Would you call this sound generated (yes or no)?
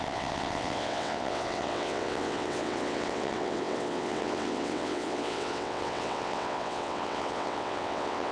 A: yes